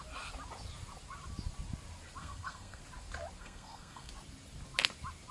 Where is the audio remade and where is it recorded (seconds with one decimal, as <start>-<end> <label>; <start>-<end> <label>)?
0.0-2.2 recorded; 2.2-2.8 remade; 2.8-3.4 recorded; 3.4-4.1 remade; 4.1-5.3 recorded